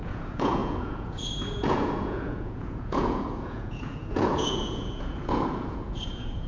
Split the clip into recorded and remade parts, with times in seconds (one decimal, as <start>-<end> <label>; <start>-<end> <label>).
0.0-6.5 remade